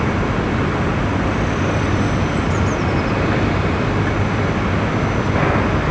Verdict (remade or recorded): recorded